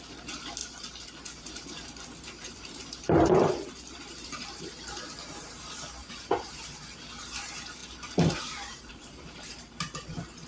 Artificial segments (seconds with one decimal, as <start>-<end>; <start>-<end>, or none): 0.0-0.6; 1.5-10.5